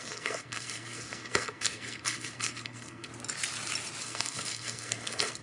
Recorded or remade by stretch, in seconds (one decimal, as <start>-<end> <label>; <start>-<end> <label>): 0.0-3.1 remade; 3.1-4.0 recorded; 4.0-5.4 remade